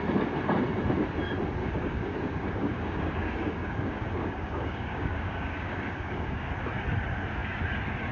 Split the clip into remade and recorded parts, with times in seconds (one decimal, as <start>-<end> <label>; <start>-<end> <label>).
0.0-1.6 recorded; 1.6-6.5 remade; 6.5-8.1 recorded